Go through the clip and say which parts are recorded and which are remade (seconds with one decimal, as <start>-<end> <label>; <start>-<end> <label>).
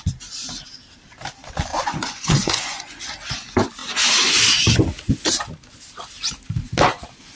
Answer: 0.0-1.7 recorded; 1.7-3.0 remade; 3.0-7.4 recorded